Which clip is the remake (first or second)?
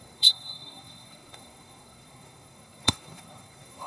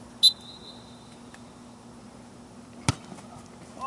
first